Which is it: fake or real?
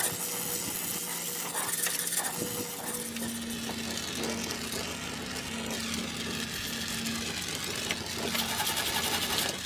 real